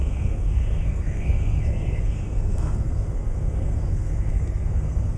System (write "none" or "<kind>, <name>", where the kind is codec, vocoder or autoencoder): codec, SNAC